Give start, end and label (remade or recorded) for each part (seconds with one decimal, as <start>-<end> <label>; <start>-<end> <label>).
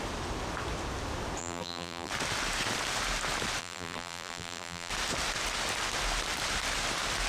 0.0-1.4 recorded; 1.4-2.1 remade; 2.1-3.6 recorded; 3.6-4.9 remade; 4.9-7.3 recorded